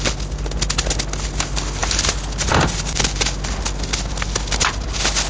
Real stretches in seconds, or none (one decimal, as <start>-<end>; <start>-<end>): 0.0-5.3

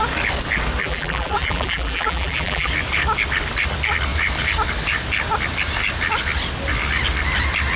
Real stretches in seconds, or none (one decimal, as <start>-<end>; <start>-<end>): 0.0-0.8; 2.7-7.8

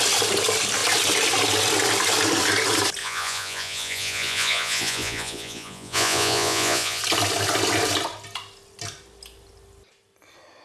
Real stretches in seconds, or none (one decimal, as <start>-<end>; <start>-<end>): 0.0-3.0; 7.0-10.6

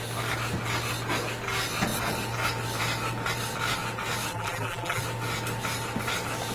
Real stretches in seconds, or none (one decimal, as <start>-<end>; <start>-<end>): 0.0-4.3; 5.0-6.5